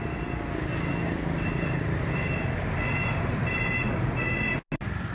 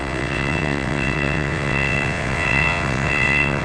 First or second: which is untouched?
first